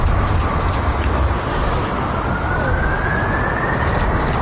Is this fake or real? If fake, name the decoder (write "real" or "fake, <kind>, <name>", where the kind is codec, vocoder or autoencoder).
real